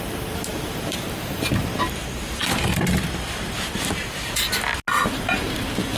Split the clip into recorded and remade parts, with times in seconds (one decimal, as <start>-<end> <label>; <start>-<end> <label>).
0.0-2.4 remade; 2.4-5.1 recorded; 5.1-6.0 remade